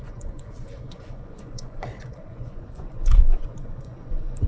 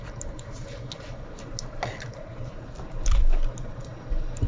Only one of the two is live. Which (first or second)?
second